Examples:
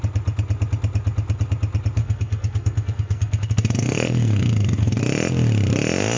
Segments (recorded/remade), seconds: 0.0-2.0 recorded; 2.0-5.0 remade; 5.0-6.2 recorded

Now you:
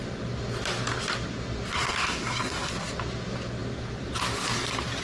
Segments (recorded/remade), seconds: 0.0-1.7 recorded; 1.7-2.7 remade; 2.7-5.0 recorded

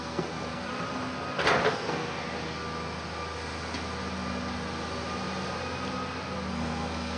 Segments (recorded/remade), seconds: 0.0-0.7 remade; 0.7-1.7 recorded; 1.7-2.2 remade; 2.2-6.5 recorded; 6.5-7.2 remade

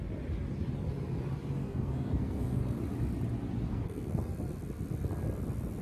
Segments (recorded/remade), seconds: 0.0-1.6 recorded; 1.6-2.8 remade; 2.8-3.7 recorded; 3.7-4.3 remade; 4.3-5.8 recorded